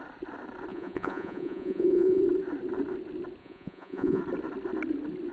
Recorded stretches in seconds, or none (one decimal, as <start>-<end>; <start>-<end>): 0.0-0.7; 2.2-3.4; 4.2-5.3